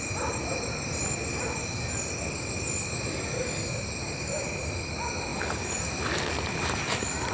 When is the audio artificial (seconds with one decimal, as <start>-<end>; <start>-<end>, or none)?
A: none